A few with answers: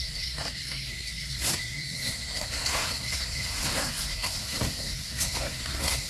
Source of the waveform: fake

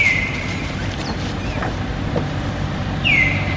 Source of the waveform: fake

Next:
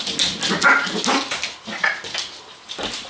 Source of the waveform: real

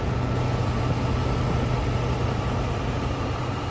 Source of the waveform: real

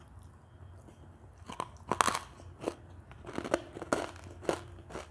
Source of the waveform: real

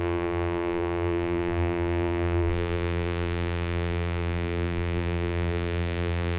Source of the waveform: fake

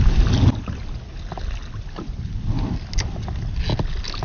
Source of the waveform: real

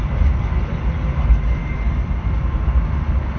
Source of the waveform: real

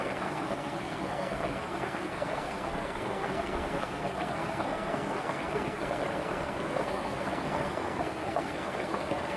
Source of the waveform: fake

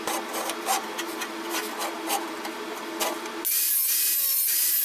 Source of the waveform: real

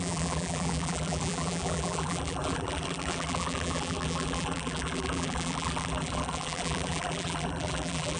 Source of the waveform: fake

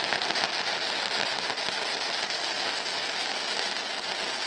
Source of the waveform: real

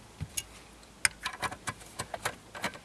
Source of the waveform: real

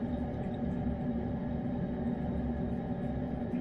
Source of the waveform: real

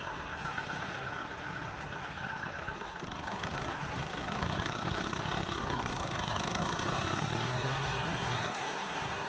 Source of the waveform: fake